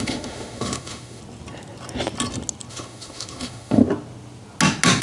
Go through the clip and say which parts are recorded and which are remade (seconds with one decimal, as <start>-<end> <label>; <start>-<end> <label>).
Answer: 0.0-1.2 remade; 1.2-2.7 recorded; 2.7-3.8 remade; 3.8-5.0 recorded

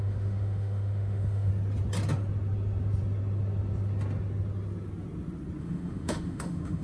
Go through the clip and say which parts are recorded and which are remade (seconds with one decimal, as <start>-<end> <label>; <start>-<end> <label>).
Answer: 0.0-1.5 remade; 1.5-5.6 recorded; 5.6-6.8 remade

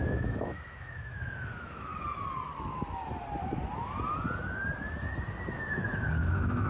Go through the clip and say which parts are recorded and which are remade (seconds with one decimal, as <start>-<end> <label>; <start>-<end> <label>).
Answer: 0.0-1.9 remade; 1.9-5.5 recorded; 5.5-6.7 remade

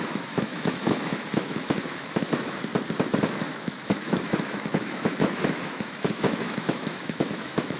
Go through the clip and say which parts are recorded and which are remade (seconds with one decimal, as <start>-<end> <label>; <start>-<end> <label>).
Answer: 0.0-2.7 remade; 2.7-3.3 recorded; 3.3-7.8 remade

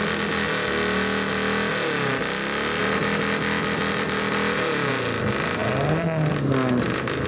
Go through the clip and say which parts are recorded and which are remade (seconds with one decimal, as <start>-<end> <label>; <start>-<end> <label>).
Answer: 0.0-7.3 recorded

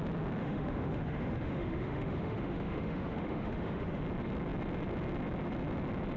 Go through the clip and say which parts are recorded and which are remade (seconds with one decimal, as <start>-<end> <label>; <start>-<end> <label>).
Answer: 0.0-0.4 recorded; 0.4-4.0 remade; 4.0-6.2 recorded